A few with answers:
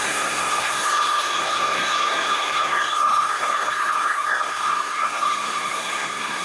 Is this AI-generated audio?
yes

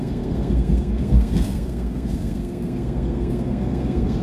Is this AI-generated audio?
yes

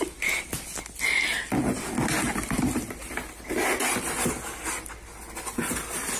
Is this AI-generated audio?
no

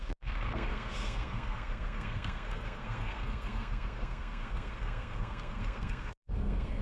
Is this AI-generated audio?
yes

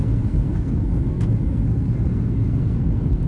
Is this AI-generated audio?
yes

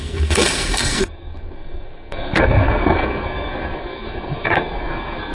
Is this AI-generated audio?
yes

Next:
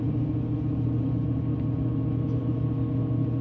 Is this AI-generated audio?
no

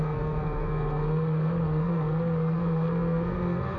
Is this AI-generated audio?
yes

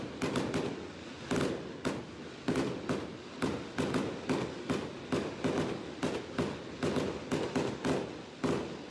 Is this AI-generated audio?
no